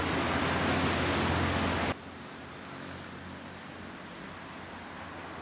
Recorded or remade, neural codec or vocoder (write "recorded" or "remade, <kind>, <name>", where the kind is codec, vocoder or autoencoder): recorded